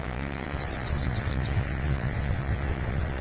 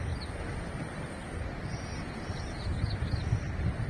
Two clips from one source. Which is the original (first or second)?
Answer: second